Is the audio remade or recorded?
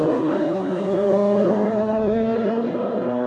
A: remade